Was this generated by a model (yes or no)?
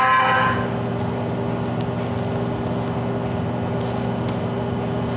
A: no